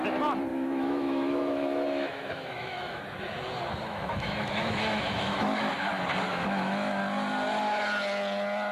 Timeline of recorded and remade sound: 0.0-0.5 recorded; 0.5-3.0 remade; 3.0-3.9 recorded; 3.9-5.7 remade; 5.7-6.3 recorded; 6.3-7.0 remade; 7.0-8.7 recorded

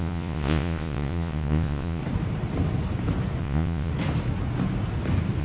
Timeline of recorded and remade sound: 0.0-2.0 remade; 2.0-3.4 recorded; 3.4-3.9 remade; 3.9-5.4 recorded

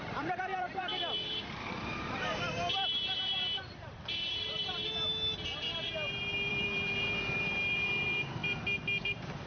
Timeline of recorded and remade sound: 0.0-1.0 remade; 1.0-1.7 recorded; 1.7-4.8 remade; 4.8-6.5 recorded; 6.5-8.4 remade; 8.4-9.0 recorded; 9.0-9.5 remade